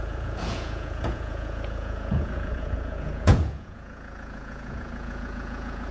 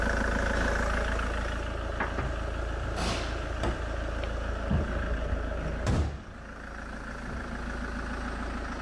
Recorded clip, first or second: second